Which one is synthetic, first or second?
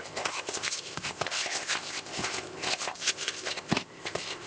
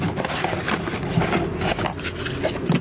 first